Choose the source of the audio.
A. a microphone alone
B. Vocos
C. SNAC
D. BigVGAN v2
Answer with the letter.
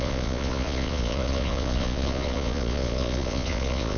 B